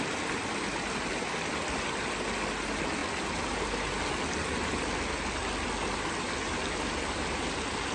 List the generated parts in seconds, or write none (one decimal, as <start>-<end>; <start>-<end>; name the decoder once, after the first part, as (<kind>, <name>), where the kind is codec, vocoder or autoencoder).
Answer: none